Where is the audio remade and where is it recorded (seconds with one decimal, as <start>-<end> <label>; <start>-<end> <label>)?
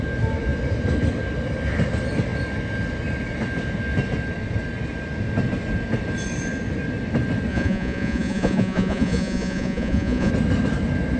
0.0-7.5 recorded; 7.5-10.3 remade; 10.3-11.2 recorded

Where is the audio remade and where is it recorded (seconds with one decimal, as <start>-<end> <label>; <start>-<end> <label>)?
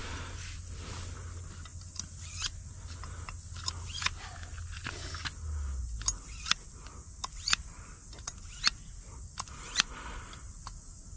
0.0-11.2 recorded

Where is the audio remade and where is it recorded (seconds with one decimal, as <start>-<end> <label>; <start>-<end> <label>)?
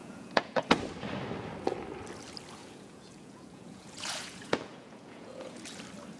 0.0-0.7 remade; 0.7-2.6 recorded; 2.6-5.6 remade; 5.6-6.2 recorded